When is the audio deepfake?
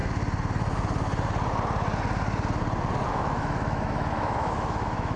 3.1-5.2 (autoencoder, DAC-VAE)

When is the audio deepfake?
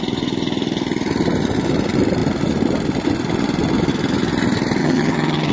4.8-5.5 (vocoder, HiFi-GAN)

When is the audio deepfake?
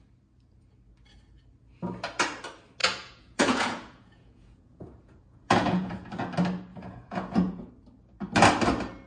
2.8-6.1 (vocoder, Vocos); 6.7-7.7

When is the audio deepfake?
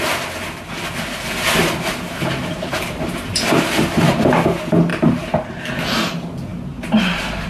1.6-4.2 (vocoder, BigVGAN v2); 4.9-5.6; 6.5-7.5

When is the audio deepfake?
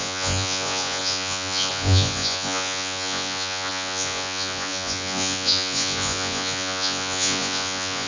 0.0-8.1 (vocoder, Vocos)